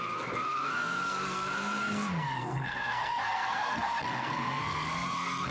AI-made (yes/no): yes